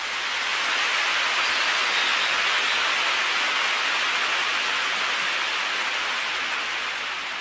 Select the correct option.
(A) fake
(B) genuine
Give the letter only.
B